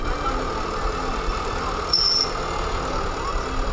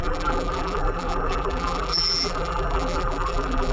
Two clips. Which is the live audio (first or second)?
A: first